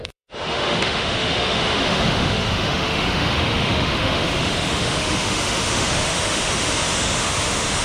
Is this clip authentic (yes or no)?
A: no